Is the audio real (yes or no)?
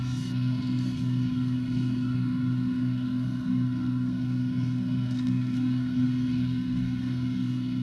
no